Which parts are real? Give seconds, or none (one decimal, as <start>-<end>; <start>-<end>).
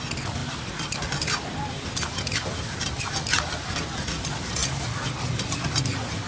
0.0-6.3